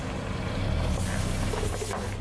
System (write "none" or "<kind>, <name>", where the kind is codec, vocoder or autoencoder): none